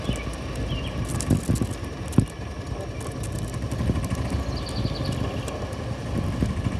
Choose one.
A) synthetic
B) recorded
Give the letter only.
B